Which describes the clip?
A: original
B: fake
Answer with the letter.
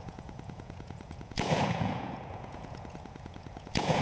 B